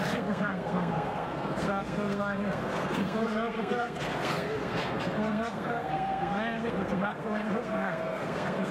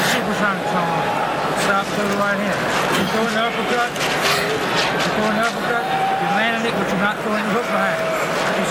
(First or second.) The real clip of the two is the second